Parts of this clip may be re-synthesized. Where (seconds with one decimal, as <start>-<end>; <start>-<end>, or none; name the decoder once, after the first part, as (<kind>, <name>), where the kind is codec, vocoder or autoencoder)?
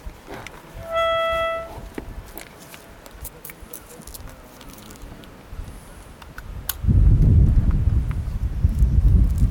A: none